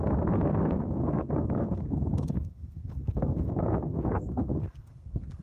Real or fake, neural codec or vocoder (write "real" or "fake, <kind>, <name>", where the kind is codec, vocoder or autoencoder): fake, codec, SNAC